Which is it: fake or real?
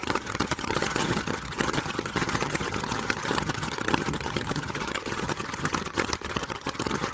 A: fake